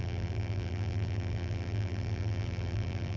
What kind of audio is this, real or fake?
fake